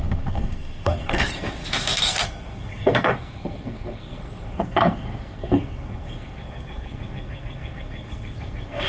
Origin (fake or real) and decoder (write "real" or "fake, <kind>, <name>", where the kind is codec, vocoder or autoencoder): fake, codec, SNAC